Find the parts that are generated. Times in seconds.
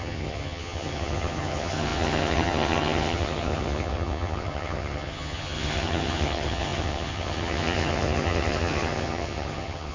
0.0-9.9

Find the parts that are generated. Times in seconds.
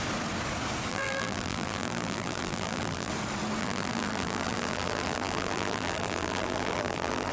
0.9-3.1; 3.6-7.3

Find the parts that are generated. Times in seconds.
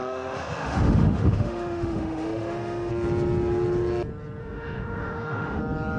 0.0-2.9; 4.4-5.6